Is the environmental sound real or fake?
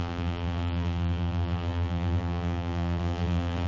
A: fake